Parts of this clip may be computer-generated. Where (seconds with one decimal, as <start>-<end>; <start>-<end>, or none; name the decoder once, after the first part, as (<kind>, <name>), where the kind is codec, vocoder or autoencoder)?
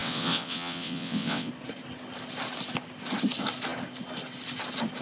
0.0-1.5 (vocoder, WaveNeXt)